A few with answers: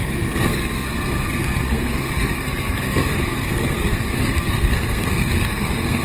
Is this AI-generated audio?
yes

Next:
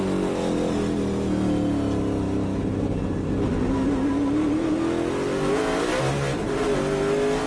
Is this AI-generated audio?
no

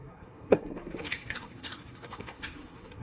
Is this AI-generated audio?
yes